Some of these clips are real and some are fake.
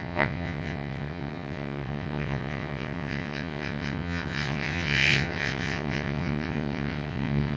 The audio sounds fake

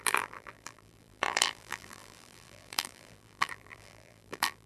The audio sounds fake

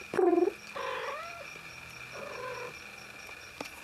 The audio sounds real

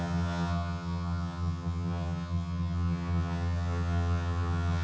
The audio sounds fake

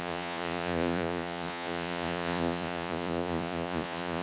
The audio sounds fake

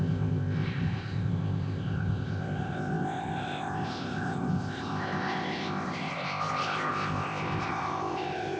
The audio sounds fake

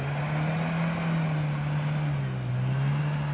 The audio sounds real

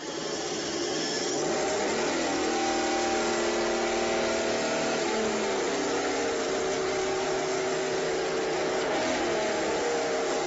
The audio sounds real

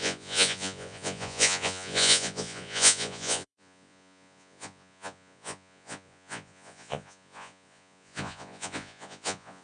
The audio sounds fake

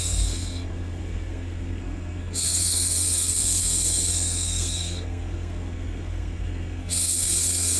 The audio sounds fake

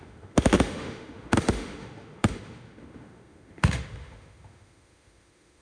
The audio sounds fake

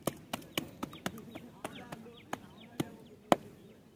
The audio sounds real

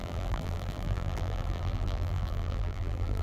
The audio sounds fake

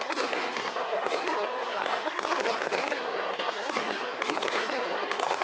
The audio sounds fake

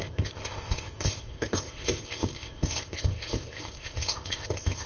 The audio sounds fake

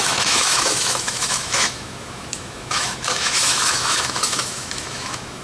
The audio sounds fake